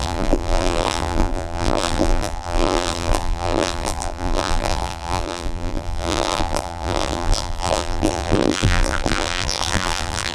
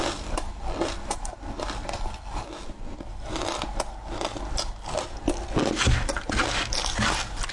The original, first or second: second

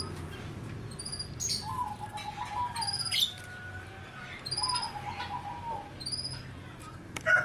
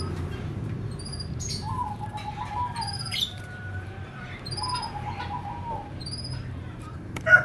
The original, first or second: first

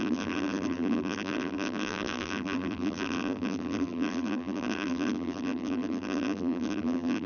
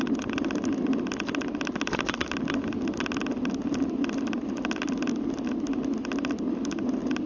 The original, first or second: second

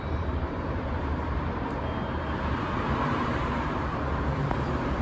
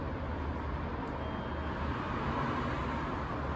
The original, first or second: second